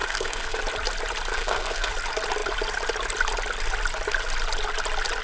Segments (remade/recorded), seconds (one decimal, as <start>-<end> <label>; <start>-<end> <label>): 0.0-0.6 remade; 0.6-1.3 recorded; 1.3-1.9 remade; 1.9-5.2 recorded